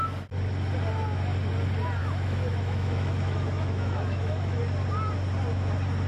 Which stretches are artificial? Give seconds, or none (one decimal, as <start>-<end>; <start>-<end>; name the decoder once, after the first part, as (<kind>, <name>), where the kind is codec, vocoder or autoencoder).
2.0-4.6 (autoencoder, DAC-VAE)